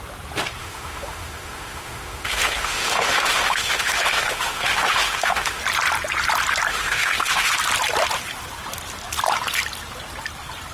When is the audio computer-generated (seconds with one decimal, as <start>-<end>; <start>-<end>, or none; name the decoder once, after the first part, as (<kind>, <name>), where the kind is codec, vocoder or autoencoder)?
0.6-5.6 (autoencoder, DAC-VAE); 6.7-7.5